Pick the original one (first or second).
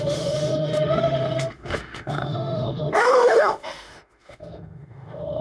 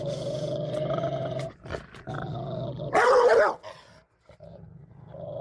second